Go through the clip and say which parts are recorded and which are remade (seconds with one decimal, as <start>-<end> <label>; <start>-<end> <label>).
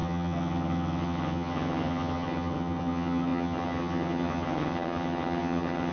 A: 0.0-5.9 remade